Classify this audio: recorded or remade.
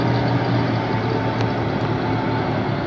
recorded